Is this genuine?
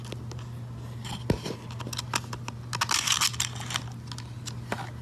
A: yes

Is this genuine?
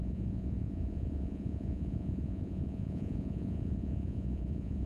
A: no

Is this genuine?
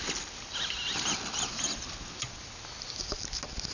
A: yes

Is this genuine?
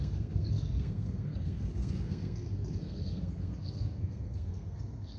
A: no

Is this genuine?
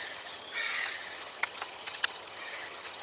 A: no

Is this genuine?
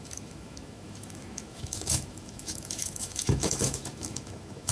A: no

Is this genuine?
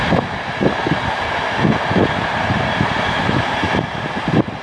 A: yes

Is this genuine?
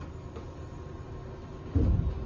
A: yes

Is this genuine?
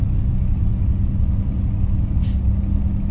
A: yes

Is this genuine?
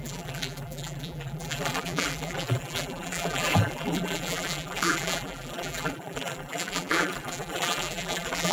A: no